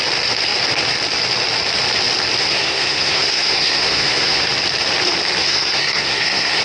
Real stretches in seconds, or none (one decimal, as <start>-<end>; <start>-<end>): 0.0-2.4; 4.5-5.4